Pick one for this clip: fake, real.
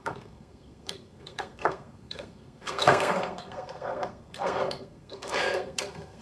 fake